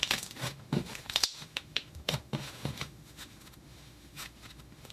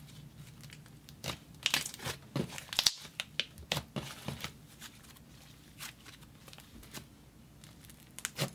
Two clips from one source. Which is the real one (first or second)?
second